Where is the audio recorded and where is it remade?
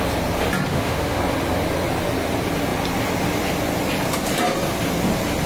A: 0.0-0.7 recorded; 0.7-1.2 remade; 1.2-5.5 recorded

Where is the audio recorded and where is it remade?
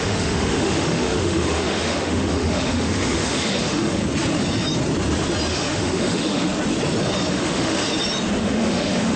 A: 0.0-4.0 remade; 4.0-5.5 recorded; 5.5-6.5 remade; 6.5-7.3 recorded; 7.3-7.8 remade; 7.8-8.4 recorded; 8.4-9.2 remade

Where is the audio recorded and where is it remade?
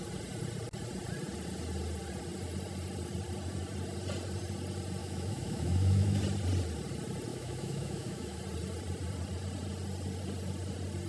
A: 0.0-5.0 recorded; 5.0-6.2 remade; 6.2-7.3 recorded; 7.3-8.4 remade; 8.4-11.1 recorded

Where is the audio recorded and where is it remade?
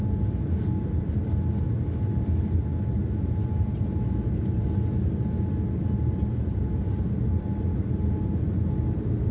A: 0.0-9.3 recorded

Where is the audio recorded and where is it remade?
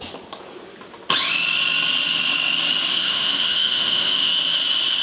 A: 0.0-2.9 recorded; 2.9-4.3 remade; 4.3-5.0 recorded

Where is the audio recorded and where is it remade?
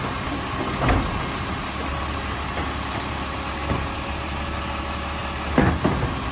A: 0.0-6.3 recorded